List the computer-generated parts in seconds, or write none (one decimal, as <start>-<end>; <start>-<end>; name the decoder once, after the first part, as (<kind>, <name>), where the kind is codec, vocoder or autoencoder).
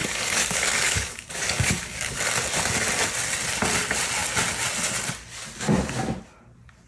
0.0-2.2 (codec, DAC)